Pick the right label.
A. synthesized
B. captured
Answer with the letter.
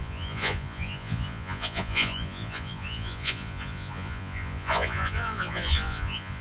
A